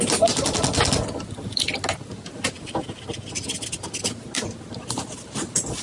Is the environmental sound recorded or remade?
recorded